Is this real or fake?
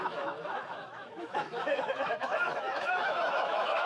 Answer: fake